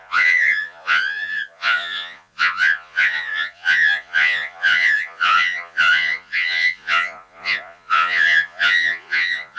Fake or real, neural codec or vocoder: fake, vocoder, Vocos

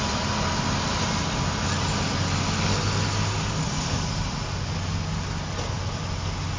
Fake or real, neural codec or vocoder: real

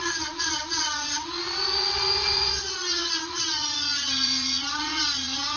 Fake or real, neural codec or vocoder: fake, vocoder, Vocos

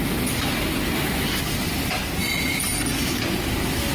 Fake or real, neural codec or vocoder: real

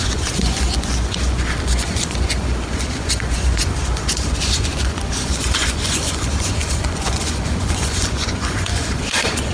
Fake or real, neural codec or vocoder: fake, vocoder, Vocos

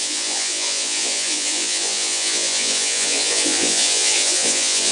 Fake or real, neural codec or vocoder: fake, vocoder, Vocos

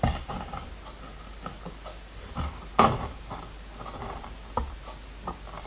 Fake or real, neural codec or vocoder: real